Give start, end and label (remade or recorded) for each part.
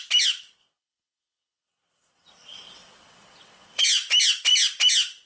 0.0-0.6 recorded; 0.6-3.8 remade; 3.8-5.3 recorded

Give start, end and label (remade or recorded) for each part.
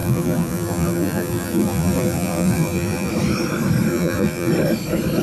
0.0-3.1 remade; 3.1-3.9 recorded; 3.9-4.5 remade; 4.5-5.2 recorded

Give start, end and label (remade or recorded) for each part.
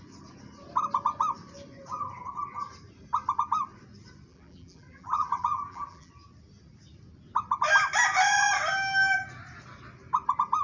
0.0-4.3 recorded; 4.3-6.1 remade; 6.1-10.6 recorded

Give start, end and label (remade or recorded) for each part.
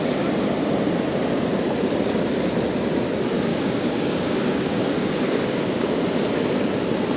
0.0-3.5 recorded; 3.5-6.0 remade; 6.0-7.2 recorded